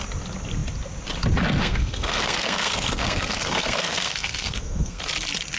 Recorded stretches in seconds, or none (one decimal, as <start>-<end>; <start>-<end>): 0.0-1.6; 5.0-5.6